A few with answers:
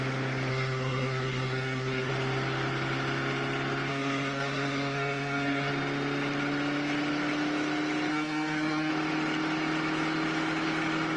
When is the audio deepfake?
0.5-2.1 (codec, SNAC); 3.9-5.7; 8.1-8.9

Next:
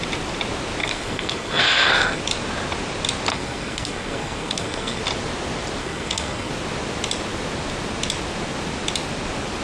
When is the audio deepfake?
0.8-2.2 (codec, SNAC); 3.3-5.0; 5.8-6.5